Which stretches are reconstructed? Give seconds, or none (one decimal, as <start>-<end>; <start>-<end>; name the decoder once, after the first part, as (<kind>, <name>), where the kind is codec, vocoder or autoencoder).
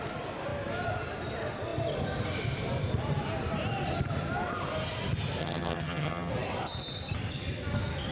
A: 5.4-6.3 (vocoder, HiFi-GAN)